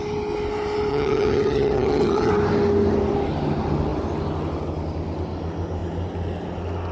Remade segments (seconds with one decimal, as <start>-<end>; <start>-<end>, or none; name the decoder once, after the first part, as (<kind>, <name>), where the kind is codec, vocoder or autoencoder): 0.9-2.3 (vocoder, HiFi-GAN)